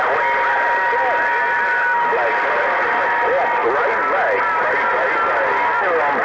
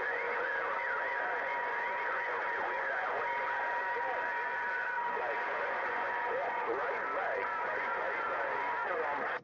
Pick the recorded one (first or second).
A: first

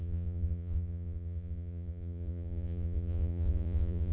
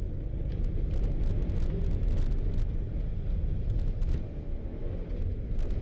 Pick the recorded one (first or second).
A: second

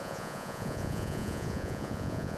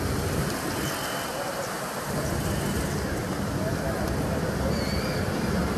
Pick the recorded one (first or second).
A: second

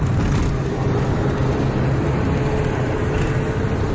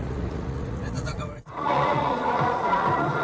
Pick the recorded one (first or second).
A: first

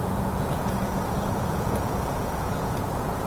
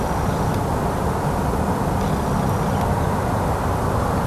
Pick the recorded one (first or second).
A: second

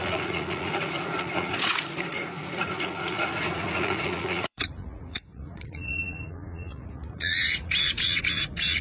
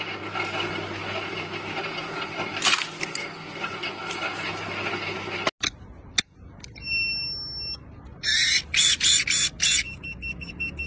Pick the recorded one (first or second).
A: second